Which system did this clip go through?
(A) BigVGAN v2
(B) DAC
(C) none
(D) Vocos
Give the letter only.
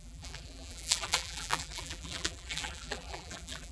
A